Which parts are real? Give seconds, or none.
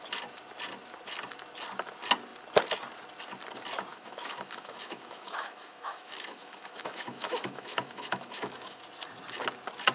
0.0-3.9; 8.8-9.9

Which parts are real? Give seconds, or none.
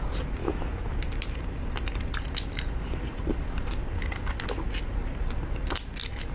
0.0-0.4; 0.9-6.3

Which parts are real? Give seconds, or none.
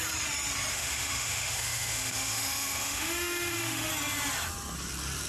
0.0-0.7; 3.9-5.3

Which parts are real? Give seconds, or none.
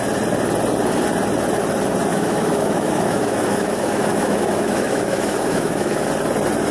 0.0-2.1; 6.1-6.7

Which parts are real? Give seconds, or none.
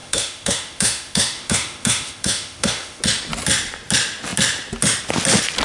3.0-5.6